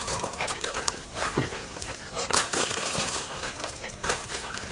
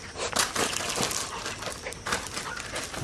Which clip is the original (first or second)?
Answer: second